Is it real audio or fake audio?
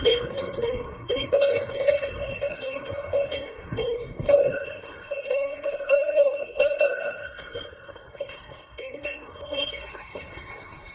fake